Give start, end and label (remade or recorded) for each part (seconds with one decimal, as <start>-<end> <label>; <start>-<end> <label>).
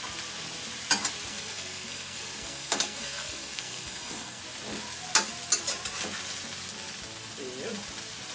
0.0-1.3 recorded; 1.3-4.4 remade; 4.4-8.3 recorded